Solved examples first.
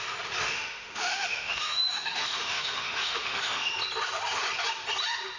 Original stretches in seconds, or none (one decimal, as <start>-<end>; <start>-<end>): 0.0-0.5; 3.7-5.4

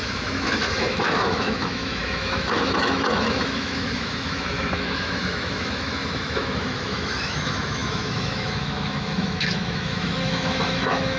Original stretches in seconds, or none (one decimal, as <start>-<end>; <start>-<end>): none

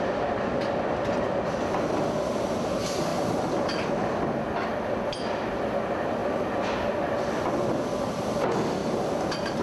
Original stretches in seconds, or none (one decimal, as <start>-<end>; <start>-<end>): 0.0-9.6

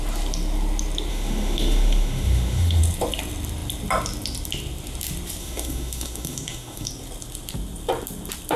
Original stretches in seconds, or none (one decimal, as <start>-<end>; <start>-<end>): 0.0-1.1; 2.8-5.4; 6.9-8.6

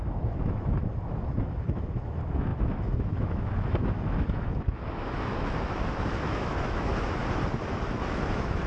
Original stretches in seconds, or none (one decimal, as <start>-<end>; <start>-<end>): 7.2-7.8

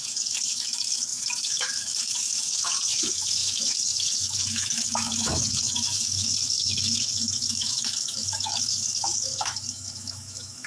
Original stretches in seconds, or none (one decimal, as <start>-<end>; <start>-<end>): none

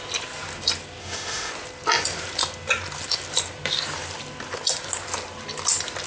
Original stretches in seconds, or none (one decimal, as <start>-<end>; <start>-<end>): 0.0-1.0; 1.5-6.1